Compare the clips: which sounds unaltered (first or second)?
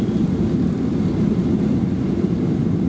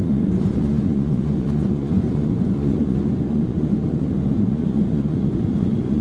first